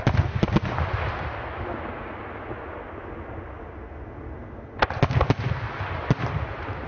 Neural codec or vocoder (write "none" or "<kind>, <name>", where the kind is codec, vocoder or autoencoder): none